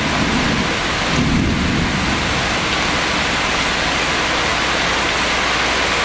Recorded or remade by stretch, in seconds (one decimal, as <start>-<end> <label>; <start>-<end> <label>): 0.0-6.0 recorded